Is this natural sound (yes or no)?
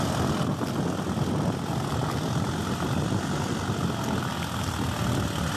yes